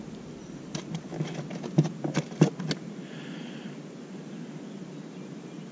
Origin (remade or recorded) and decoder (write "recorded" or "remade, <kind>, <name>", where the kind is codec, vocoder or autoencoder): recorded